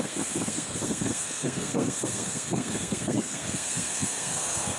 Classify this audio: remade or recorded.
remade